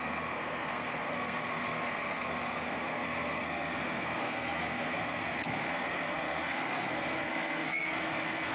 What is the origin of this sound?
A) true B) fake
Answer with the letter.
B